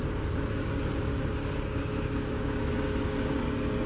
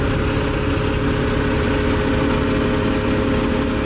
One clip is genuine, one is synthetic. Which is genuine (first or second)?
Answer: second